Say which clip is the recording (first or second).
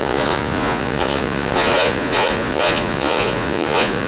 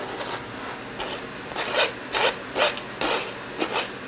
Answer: second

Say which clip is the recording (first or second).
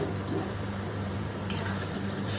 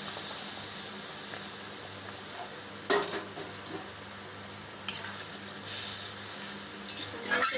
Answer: second